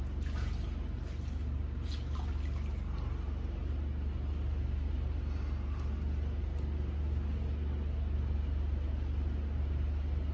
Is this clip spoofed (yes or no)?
no